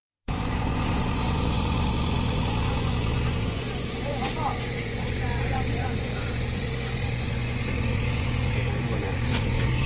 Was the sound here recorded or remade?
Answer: remade